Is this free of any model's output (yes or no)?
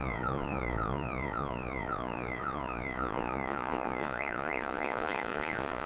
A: no